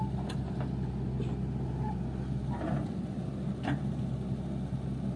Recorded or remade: recorded